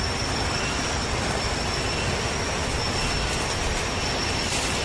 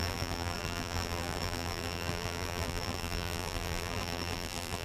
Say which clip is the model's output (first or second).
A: second